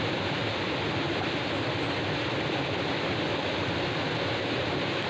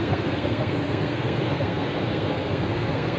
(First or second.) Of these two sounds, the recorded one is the first